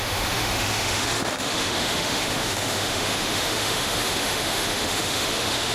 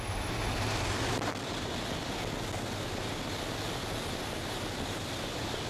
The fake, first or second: first